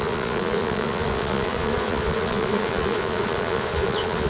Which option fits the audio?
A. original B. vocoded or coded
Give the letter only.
B